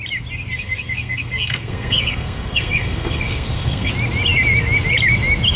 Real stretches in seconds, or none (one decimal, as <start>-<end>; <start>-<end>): 0.0-0.5; 3.9-5.6